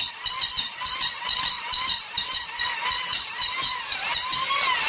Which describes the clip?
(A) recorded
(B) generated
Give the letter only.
A